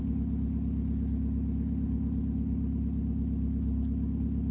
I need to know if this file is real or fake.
real